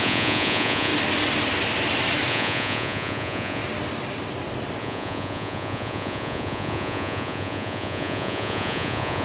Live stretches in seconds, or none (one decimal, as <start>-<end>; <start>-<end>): 0.9-2.3; 3.6-4.8